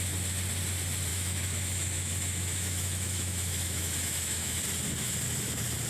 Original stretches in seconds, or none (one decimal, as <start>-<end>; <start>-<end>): 0.0-1.1; 4.6-5.9